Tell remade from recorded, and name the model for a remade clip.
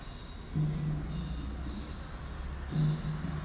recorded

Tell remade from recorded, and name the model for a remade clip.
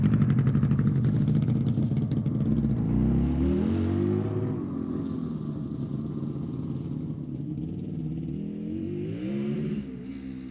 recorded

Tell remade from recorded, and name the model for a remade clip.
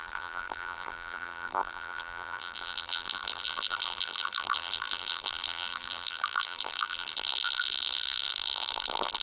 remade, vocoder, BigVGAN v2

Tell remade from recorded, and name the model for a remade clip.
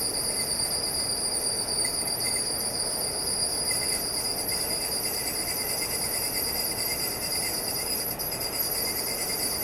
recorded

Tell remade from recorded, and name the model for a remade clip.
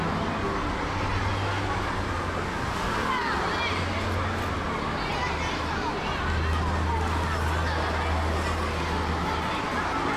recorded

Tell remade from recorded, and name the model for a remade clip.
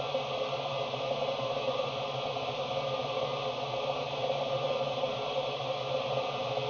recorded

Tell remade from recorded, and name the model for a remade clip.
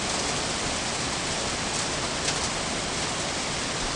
recorded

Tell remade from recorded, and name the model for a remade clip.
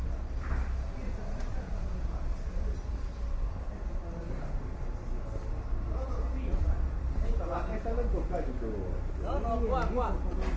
recorded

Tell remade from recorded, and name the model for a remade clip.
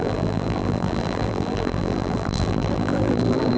remade, vocoder, BigVGAN v2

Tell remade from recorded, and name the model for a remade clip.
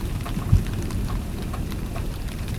remade, vocoder, BigVGAN v2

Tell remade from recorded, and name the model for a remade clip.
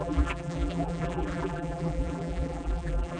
remade, vocoder, BigVGAN v2